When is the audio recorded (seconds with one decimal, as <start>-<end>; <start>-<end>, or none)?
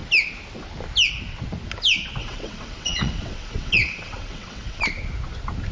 0.0-2.2; 4.8-5.7